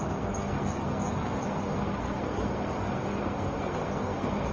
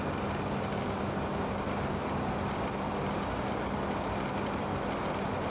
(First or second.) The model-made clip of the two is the first